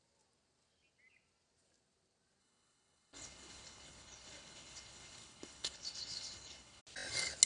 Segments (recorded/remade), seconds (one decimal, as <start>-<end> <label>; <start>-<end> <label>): 0.0-2.4 recorded; 2.4-6.8 remade; 6.8-7.5 recorded